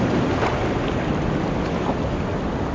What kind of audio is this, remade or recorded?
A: recorded